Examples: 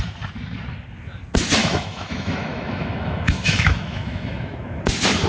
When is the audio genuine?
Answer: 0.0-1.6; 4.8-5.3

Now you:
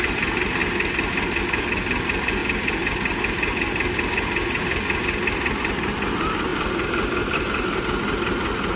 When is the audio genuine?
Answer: 0.6-1.4; 2.4-4.6